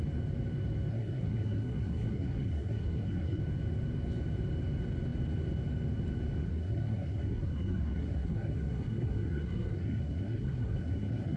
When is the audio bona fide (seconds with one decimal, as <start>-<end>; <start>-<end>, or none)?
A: 0.0-0.9; 3.4-6.5